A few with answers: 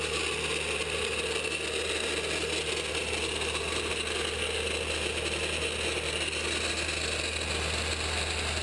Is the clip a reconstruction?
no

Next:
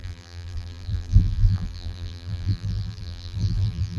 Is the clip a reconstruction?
yes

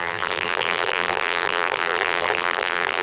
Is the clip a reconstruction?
yes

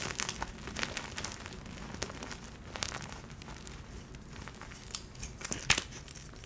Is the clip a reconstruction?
no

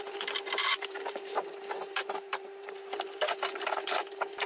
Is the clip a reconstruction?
yes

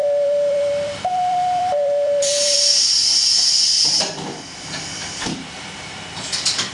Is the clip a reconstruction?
yes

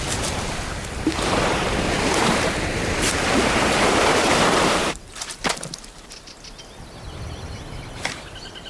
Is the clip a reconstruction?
yes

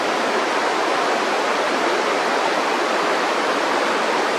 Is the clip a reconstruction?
yes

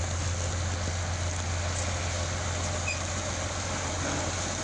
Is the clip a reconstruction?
no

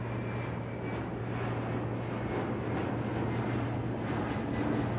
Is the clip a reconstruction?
no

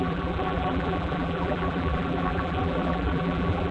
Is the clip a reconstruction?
yes